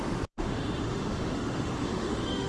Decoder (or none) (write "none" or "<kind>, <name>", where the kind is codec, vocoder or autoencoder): autoencoder, DAC-VAE